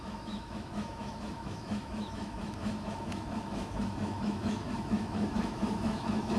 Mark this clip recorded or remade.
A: remade